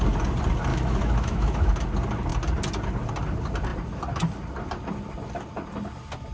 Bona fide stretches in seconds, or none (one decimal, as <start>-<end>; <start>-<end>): 0.0-0.7; 1.7-6.3